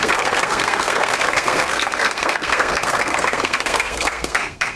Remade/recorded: remade